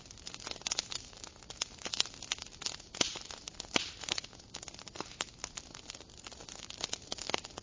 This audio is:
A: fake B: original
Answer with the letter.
B